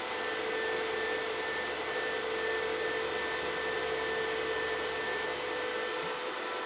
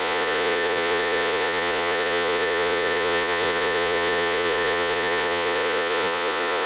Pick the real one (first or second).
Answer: first